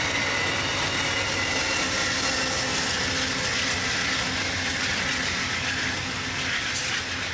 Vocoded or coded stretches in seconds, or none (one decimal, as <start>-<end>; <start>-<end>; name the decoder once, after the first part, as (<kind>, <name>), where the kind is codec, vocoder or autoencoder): none